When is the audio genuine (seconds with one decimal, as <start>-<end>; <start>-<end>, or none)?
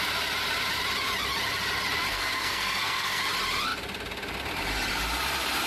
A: 0.0-2.1; 3.2-5.7